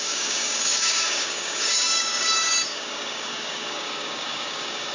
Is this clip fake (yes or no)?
yes